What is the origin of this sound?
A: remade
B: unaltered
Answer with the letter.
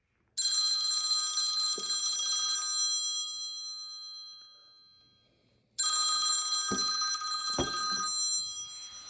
B